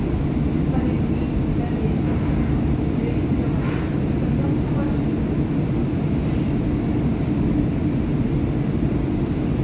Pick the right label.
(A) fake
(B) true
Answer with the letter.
B